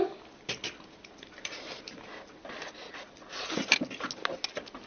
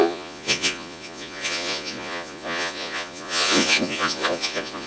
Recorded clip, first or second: first